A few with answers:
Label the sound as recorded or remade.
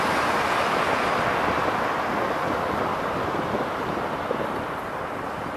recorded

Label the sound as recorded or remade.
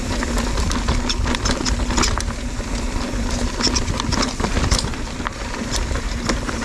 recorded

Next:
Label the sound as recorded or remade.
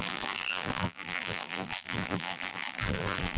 remade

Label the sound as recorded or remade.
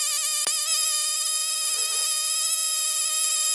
recorded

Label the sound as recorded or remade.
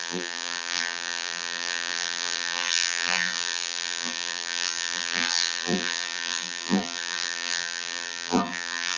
remade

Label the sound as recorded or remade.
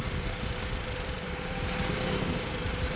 remade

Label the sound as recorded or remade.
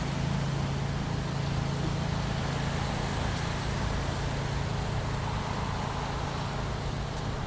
recorded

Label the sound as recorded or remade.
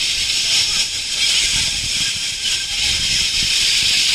remade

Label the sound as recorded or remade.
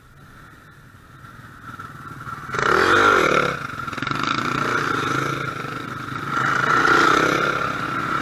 recorded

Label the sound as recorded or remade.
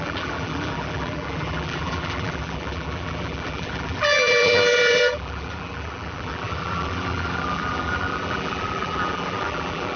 remade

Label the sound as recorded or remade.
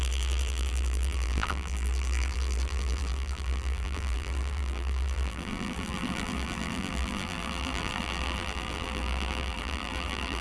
remade